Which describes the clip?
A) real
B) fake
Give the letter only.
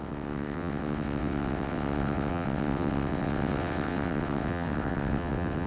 B